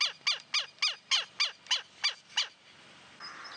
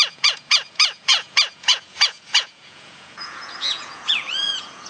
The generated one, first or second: second